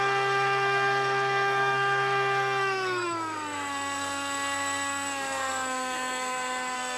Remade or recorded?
remade